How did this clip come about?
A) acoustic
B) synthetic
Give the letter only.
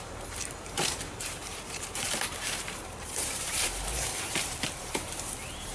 B